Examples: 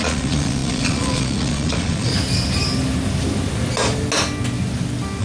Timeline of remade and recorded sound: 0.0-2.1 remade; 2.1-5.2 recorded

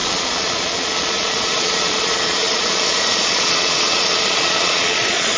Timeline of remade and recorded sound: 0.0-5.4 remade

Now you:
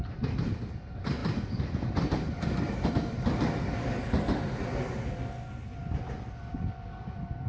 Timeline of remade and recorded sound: 0.0-7.5 recorded